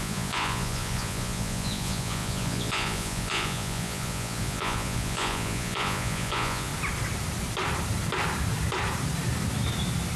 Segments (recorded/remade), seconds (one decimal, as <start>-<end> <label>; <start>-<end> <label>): 0.0-6.7 remade; 6.7-10.2 recorded